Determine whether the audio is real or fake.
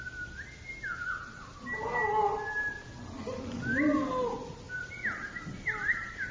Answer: real